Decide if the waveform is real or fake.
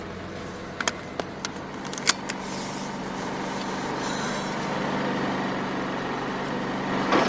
real